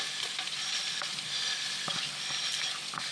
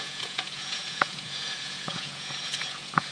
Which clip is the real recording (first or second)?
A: first